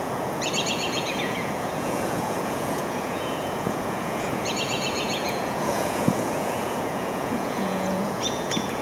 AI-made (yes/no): yes